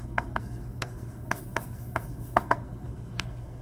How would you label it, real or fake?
fake